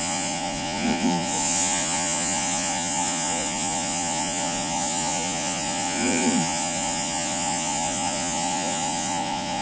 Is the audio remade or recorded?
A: remade